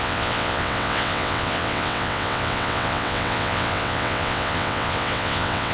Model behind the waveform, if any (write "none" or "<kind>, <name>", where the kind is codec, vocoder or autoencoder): vocoder, WaveNeXt